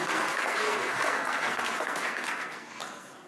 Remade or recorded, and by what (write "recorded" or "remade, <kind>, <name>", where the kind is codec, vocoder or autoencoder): remade, codec, SNAC